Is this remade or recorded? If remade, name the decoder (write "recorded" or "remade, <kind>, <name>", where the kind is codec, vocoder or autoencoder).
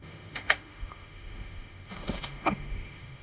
remade, autoencoder, DAC-VAE